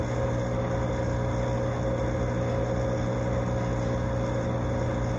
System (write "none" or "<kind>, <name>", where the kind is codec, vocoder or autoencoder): none